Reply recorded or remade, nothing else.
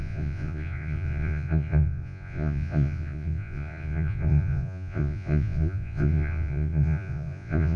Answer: remade